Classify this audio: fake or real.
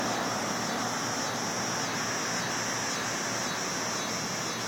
real